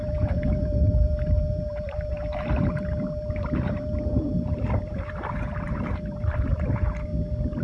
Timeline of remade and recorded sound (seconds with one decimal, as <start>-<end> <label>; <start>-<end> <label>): 0.0-7.1 remade; 7.1-7.6 recorded

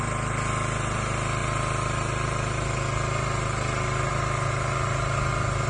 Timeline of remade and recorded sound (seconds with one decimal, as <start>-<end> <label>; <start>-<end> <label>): 0.0-5.7 recorded

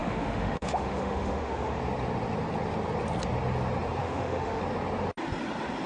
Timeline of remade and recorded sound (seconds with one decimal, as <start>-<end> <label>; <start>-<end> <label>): 0.0-1.8 remade; 1.8-4.0 recorded; 4.0-4.6 remade; 4.6-5.9 recorded

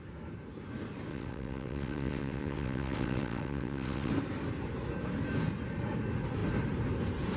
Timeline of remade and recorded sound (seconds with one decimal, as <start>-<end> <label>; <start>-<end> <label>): 0.0-1.1 recorded; 1.1-4.1 remade; 4.1-7.4 recorded

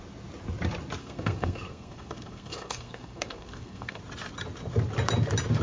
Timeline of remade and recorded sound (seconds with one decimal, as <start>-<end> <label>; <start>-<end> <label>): 0.0-1.0 recorded; 1.0-4.0 remade; 4.0-5.6 recorded